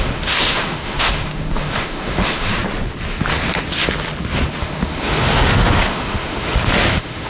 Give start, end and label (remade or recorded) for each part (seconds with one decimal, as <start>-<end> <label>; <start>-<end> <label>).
0.0-2.5 remade; 2.5-4.6 recorded; 4.6-7.3 remade